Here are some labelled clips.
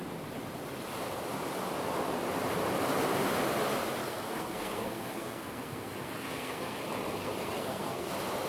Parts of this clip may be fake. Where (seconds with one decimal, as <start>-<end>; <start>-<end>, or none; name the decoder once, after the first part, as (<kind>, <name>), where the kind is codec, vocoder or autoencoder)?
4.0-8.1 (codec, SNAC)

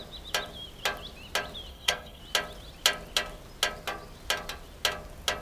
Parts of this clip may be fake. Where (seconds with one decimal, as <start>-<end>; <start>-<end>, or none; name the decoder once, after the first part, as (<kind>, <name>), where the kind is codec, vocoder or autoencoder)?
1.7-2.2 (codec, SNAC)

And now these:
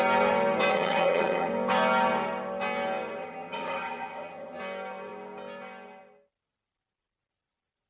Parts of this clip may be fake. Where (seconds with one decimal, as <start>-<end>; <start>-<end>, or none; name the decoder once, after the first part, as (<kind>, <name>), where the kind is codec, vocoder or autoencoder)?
0.7-1.5 (vocoder, HiFi-GAN); 3.2-4.6

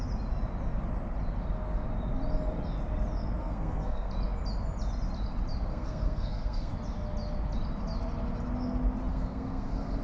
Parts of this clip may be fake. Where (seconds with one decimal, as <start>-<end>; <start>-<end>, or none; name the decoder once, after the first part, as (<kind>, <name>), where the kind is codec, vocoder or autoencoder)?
3.4-4.1 (codec, SNAC); 5.7-6.7; 9.1-10.0

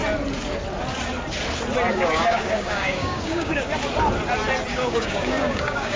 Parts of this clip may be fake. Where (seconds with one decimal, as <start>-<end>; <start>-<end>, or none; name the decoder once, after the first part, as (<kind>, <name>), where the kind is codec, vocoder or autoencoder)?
1.9-3.7 (codec, DAC); 4.7-6.0

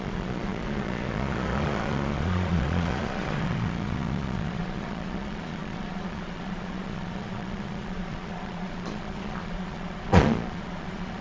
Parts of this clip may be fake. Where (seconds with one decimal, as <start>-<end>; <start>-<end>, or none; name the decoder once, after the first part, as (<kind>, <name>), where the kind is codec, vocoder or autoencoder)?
0.0-11.2 (vocoder, Vocos)

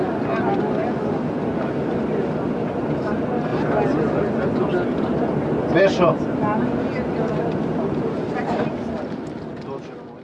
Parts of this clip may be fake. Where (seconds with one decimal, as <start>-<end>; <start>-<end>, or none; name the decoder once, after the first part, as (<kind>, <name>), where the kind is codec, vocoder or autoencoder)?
none